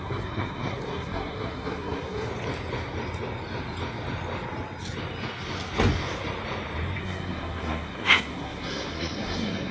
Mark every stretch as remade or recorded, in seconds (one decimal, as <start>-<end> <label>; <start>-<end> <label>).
0.0-2.3 remade; 2.3-7.0 recorded; 7.0-9.7 remade